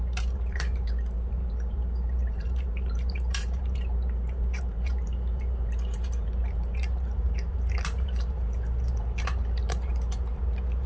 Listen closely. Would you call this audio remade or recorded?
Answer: remade